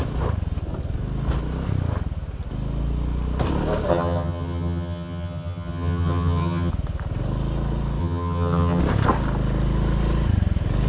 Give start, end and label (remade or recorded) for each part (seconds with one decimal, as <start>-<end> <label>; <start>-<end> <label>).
0.0-3.9 recorded; 3.9-6.7 remade; 6.7-8.0 recorded; 8.0-8.8 remade; 8.8-10.9 recorded